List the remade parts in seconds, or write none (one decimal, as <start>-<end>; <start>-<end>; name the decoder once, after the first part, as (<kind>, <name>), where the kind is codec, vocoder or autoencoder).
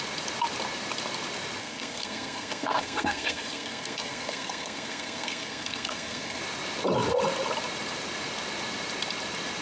1.6-6.4 (codec, SNAC)